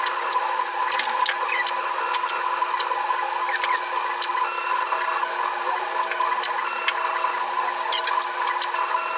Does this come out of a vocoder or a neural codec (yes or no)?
no